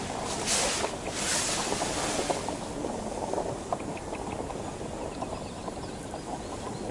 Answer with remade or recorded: recorded